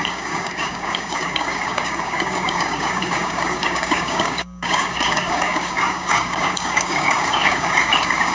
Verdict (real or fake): fake